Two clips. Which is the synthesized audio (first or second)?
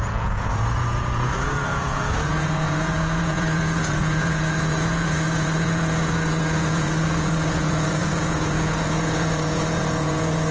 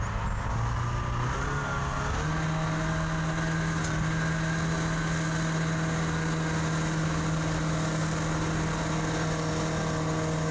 first